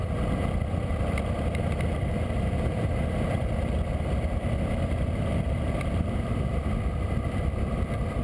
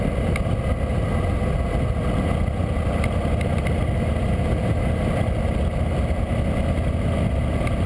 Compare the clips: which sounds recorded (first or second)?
second